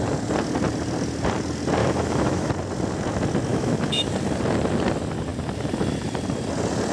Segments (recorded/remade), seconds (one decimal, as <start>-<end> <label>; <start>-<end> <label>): 0.0-1.8 recorded; 1.8-2.5 remade; 2.5-3.5 recorded; 3.5-4.1 remade; 4.1-6.9 recorded